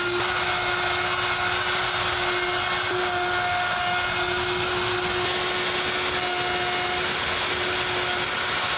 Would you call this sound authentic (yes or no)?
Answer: yes